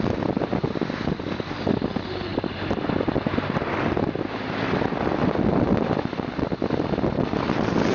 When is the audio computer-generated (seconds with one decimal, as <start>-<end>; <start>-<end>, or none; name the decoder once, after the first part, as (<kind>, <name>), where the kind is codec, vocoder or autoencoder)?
none